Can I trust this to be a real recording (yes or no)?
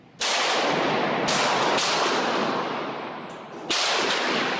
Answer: yes